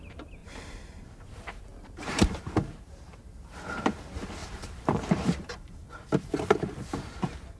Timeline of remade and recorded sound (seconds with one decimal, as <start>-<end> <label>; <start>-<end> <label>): 0.0-0.4 recorded; 0.4-1.0 remade; 1.0-1.7 recorded; 1.7-3.2 remade; 3.2-4.4 recorded; 4.4-5.9 remade; 5.9-7.6 recorded